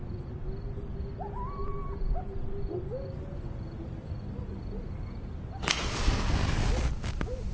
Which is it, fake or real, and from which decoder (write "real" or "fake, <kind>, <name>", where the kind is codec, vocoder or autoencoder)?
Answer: real